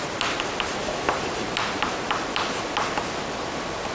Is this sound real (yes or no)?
yes